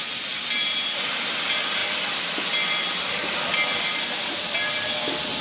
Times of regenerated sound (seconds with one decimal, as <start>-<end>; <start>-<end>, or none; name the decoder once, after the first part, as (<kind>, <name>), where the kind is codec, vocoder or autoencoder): none